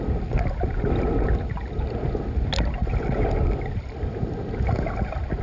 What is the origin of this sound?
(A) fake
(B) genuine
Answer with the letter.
B